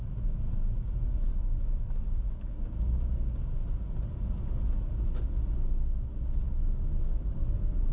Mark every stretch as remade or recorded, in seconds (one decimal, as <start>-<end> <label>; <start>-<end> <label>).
0.0-1.3 recorded; 1.3-3.4 remade; 3.4-7.9 recorded